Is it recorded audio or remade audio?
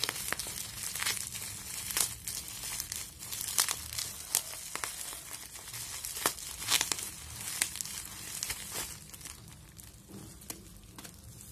recorded